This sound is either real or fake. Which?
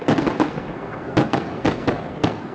fake